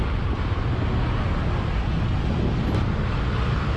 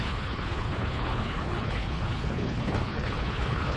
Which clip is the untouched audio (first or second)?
first